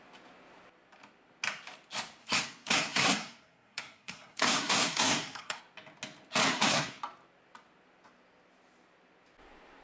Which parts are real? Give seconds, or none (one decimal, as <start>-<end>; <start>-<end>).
0.0-2.2; 5.6-6.5; 7.0-9.8